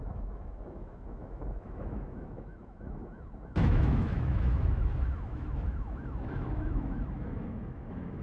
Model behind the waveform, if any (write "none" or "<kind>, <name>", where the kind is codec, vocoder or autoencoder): autoencoder, DAC-VAE